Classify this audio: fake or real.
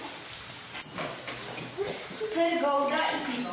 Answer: real